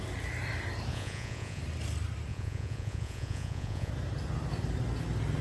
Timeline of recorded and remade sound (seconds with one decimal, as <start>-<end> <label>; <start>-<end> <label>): 0.0-0.9 recorded; 0.9-1.6 remade; 1.6-2.3 recorded; 2.3-3.9 remade; 3.9-5.4 recorded